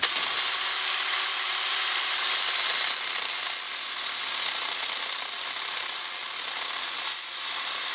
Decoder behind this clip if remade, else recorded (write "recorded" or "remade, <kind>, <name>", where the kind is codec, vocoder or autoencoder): remade, vocoder, BigVGAN v2